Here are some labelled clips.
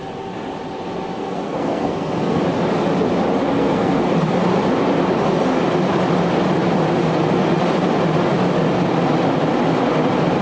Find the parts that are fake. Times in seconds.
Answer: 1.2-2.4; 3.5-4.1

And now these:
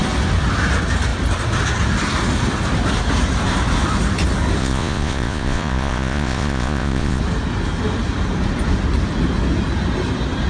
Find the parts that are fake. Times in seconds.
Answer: 4.6-7.2

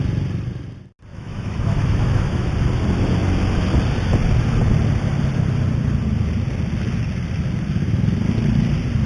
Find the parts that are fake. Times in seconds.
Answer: 1.1-2.5

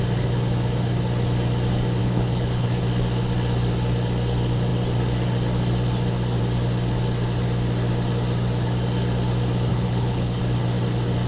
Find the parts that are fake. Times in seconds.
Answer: 2.0-2.8; 9.7-10.4